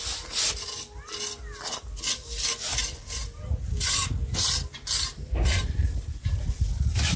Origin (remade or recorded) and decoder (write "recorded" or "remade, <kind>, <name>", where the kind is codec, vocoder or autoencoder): recorded